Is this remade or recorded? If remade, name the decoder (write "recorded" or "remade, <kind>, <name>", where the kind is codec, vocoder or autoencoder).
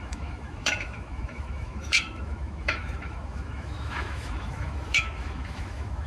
remade, autoencoder, DAC-VAE